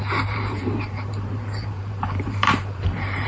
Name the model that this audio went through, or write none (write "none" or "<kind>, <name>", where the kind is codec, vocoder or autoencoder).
vocoder, BigVGAN v2